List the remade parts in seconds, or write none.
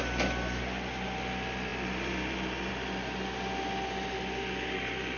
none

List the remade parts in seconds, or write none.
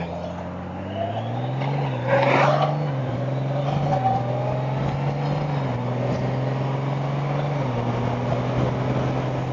3.0-3.9 (vocoder, BigVGAN v2)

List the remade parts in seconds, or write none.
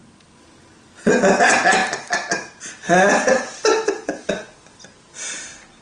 none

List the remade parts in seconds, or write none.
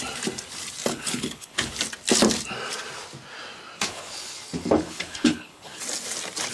0.9-1.8 (codec, HILCodec); 3.9-5.8